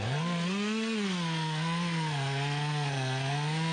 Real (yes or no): no